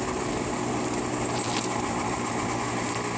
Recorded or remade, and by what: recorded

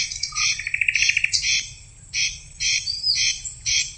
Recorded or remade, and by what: remade, vocoder, BigVGAN v2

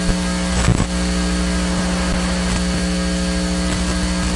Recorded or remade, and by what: recorded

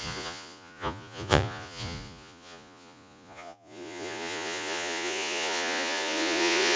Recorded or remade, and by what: remade, vocoder, Vocos